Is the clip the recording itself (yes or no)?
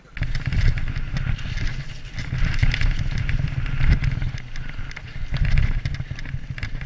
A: yes